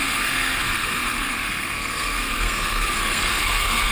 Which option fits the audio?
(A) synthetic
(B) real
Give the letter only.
A